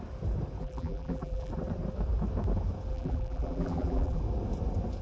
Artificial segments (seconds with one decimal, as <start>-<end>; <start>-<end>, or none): 0.6-1.5; 2.9-4.2